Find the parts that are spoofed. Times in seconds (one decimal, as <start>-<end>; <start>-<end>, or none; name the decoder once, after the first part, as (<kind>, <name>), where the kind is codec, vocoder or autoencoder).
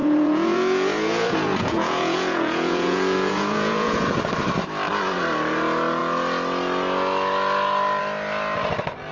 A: 0.0-4.2 (vocoder, Vocos)